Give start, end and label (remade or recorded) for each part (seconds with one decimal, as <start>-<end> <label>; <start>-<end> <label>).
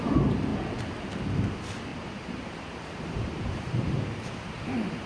0.0-1.9 recorded; 1.9-5.1 remade